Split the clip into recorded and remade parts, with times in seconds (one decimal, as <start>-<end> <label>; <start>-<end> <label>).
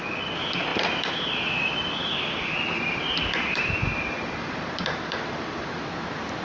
0.0-0.7 recorded; 0.7-1.4 remade; 1.4-2.0 recorded; 2.0-5.8 remade; 5.8-6.4 recorded